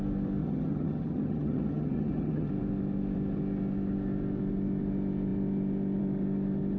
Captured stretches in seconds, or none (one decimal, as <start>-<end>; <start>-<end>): 0.0-0.4; 2.5-6.8